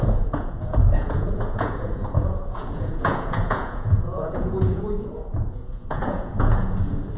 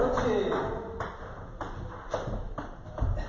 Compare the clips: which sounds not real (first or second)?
first